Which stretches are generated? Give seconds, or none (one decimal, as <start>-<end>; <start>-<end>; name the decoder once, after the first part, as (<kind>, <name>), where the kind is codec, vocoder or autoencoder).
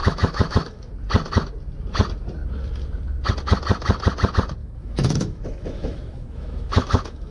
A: 0.0-0.9 (autoencoder, DAC-VAE); 4.6-7.3